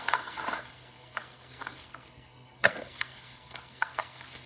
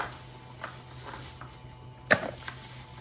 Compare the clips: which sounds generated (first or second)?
first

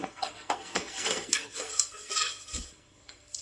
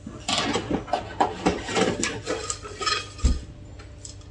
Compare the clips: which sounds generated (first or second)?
first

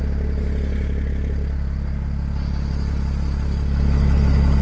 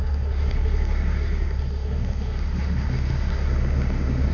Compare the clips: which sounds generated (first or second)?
second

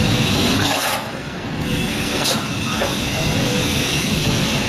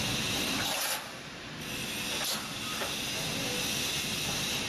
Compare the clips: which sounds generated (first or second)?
first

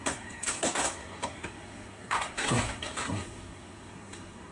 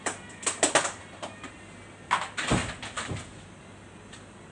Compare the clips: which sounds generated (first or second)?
first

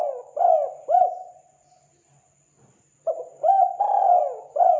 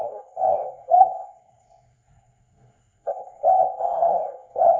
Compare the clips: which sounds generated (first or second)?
second